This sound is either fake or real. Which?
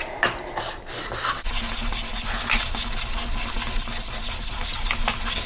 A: real